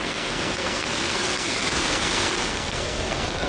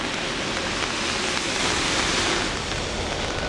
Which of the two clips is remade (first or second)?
first